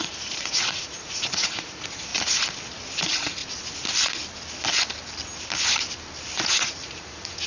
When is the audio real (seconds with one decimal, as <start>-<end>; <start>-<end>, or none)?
2.1-3.0; 3.4-6.5